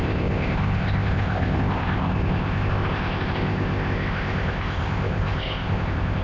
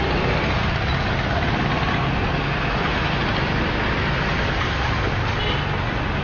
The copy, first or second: first